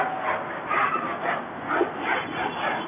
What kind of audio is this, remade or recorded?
recorded